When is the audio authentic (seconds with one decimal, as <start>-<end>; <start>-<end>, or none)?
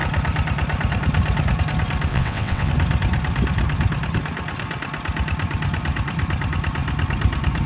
0.0-2.1; 2.7-7.7